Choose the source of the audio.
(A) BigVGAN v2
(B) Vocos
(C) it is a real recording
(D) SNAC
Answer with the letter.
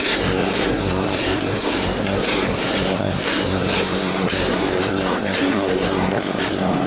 D